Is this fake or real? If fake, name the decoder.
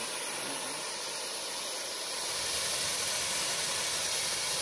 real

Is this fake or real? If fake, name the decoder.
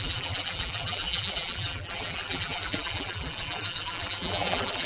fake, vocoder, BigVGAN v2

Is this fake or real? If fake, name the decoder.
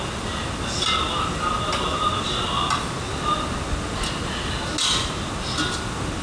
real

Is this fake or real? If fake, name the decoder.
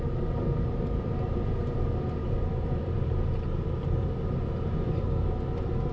fake, vocoder, BigVGAN v2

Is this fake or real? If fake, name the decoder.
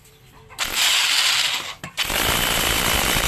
fake, vocoder, BigVGAN v2